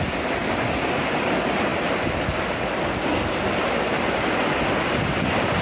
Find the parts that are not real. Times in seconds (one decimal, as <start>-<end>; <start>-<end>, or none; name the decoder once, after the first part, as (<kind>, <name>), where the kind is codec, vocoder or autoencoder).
none